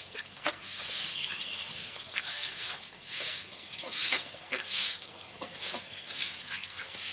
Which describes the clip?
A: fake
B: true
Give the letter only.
A